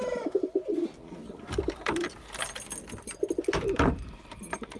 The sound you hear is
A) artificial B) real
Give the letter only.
B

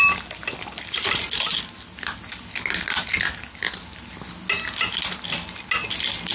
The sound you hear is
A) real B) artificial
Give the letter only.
A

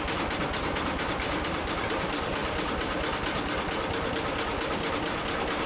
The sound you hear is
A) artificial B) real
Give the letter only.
B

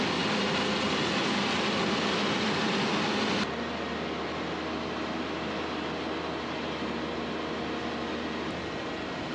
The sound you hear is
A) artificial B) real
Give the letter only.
B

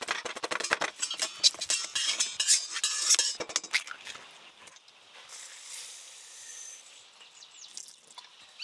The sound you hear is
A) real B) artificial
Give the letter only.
A